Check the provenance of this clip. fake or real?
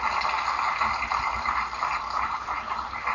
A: real